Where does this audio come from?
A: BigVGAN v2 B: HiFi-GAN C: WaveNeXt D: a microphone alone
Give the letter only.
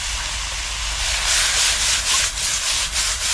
D